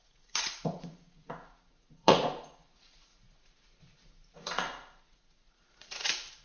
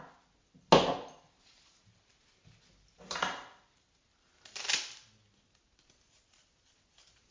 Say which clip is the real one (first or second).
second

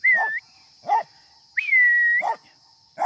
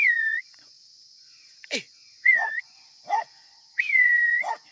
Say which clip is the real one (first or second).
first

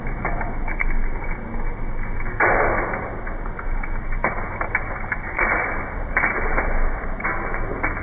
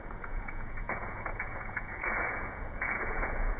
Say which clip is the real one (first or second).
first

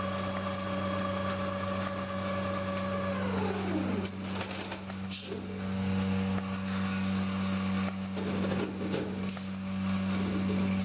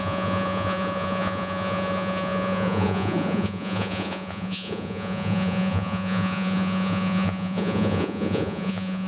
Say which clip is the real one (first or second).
first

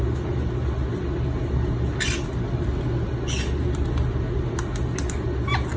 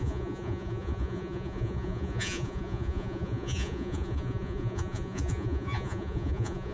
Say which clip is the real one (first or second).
first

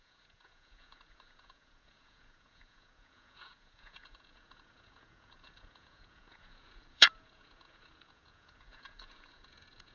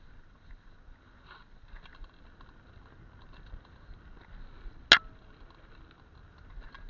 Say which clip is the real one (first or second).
second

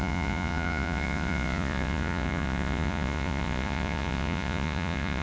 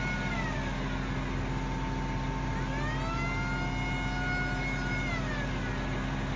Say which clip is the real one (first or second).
second